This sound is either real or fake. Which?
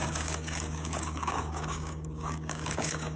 fake